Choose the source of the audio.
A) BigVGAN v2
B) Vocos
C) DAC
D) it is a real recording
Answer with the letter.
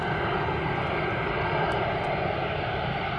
D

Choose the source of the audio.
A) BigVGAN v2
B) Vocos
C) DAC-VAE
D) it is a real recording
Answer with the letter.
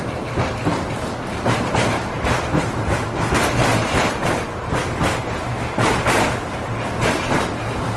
A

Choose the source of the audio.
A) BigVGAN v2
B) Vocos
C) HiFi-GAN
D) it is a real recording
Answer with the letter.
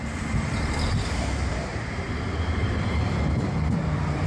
A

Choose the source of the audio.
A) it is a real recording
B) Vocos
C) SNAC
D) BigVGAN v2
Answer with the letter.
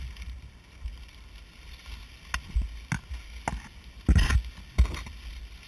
A